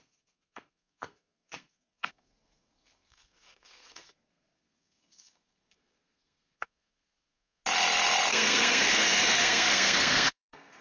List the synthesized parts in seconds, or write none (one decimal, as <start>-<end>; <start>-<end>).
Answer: 0.0-7.6; 8.3-10.8